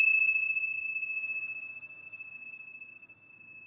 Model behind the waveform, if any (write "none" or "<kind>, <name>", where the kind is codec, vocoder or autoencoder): codec, DAC